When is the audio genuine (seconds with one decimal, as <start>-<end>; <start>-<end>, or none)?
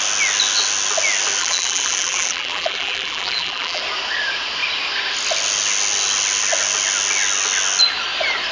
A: 0.0-1.4; 3.8-8.5